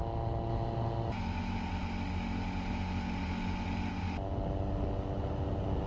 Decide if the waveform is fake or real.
real